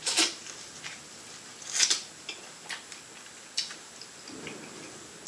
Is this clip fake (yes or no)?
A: no